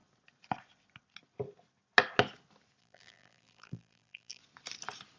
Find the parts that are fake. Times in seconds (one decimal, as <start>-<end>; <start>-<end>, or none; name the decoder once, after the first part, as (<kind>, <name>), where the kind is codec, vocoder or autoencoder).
2.8-4.4 (vocoder, BigVGAN v2)